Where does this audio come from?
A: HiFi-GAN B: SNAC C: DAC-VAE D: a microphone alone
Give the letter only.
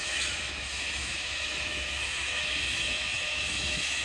C